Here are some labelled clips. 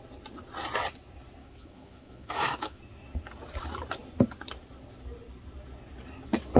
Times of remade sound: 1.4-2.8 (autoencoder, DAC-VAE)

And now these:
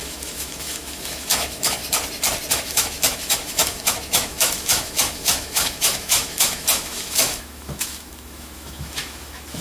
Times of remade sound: 0.0-1.8 (autoencoder, DAC-VAE); 2.5-9.6